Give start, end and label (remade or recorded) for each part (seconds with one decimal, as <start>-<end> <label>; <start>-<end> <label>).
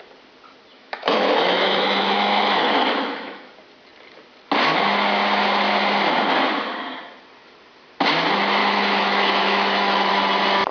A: 0.0-0.7 recorded; 0.7-3.5 remade; 3.5-8.6 recorded; 8.6-10.1 remade; 10.1-10.7 recorded